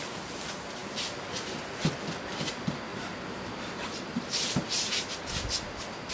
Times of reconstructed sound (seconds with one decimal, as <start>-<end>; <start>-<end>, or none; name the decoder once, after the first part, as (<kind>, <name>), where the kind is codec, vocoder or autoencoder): 2.9-4.3 (vocoder, BigVGAN v2)